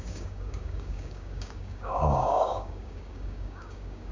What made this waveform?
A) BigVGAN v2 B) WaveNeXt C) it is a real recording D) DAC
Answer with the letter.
D